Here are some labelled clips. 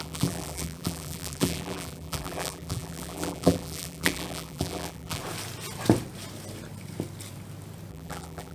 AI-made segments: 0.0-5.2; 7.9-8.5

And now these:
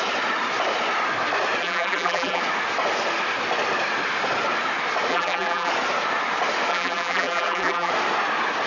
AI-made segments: 1.6-2.4; 5.1-5.7; 6.7-7.9